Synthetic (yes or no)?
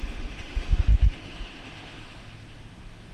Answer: yes